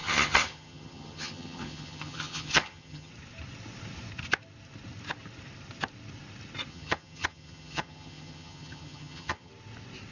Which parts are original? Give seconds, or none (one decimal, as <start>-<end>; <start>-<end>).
3.1-6.7; 9.5-10.1

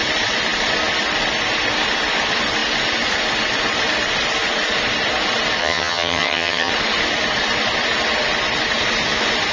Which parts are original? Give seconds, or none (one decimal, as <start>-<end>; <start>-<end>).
0.0-5.6; 6.7-9.5

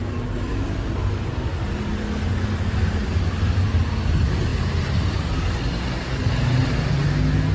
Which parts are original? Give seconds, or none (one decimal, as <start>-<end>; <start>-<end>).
0.0-7.5

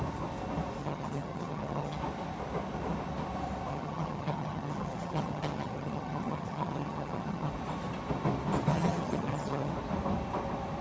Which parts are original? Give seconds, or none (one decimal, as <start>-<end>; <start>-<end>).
0.0-0.8; 2.0-3.7; 7.5-8.7; 9.7-10.8

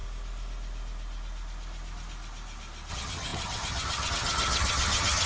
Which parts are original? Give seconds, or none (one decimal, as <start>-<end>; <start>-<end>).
0.0-2.9

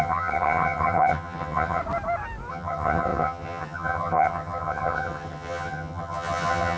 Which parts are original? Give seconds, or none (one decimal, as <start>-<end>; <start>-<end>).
1.8-2.5